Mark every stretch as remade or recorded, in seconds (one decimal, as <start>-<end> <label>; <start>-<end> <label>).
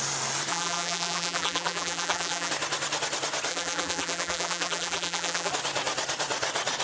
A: 0.0-0.5 recorded; 0.5-2.5 remade; 2.5-3.5 recorded; 3.5-5.5 remade; 5.5-6.8 recorded